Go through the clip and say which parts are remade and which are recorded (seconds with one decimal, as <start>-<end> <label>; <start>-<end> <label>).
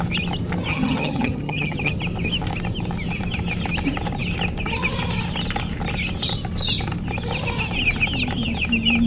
0.0-0.7 recorded; 0.7-1.9 remade; 1.9-9.1 recorded